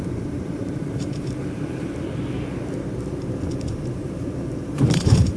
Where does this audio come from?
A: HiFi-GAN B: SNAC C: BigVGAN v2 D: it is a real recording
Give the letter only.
C